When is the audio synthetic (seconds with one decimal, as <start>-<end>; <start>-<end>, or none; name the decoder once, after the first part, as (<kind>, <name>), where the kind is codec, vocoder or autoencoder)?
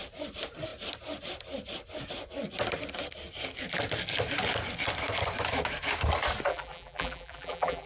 6.5-7.9 (vocoder, BigVGAN v2)